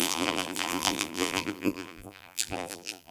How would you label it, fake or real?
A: fake